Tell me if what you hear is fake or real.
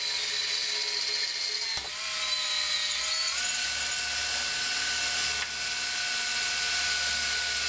real